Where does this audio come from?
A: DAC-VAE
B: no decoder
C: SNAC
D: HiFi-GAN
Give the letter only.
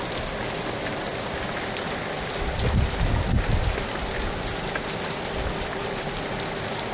B